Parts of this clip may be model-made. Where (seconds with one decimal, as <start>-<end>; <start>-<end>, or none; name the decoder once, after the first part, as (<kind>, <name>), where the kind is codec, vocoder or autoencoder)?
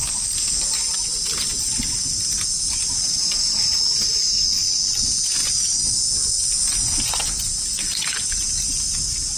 none